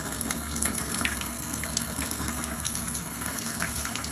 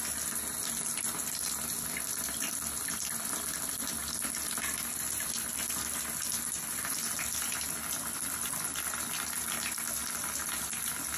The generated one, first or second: first